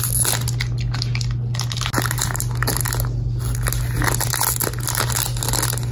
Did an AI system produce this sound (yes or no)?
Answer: no